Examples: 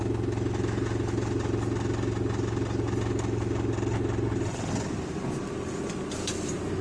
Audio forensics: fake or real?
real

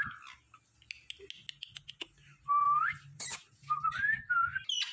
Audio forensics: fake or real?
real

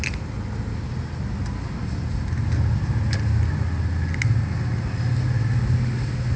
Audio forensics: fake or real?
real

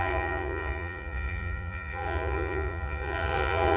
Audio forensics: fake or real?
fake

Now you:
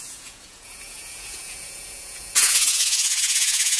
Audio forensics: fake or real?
fake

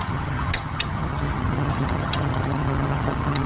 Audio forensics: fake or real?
fake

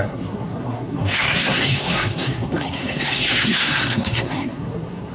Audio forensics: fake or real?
fake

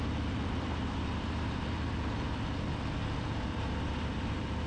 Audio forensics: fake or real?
fake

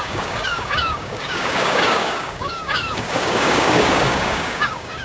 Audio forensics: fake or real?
fake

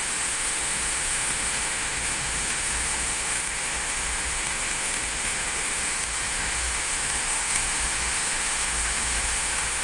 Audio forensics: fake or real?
fake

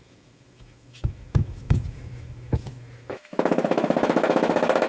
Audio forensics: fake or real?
fake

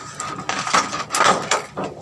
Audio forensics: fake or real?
real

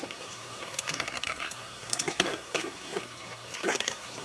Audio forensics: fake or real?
fake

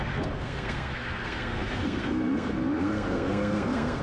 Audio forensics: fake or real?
fake